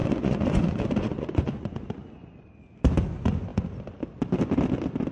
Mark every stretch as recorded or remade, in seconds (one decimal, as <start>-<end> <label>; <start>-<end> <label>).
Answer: 0.0-2.5 remade; 2.5-5.1 recorded